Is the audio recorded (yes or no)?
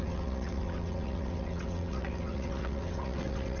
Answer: no